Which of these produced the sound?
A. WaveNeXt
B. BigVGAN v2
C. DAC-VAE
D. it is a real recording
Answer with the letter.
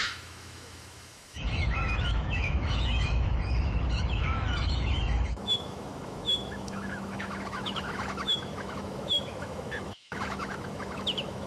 C